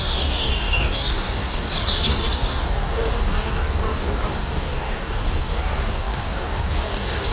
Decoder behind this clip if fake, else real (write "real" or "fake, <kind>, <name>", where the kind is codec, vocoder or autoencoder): fake, codec, DAC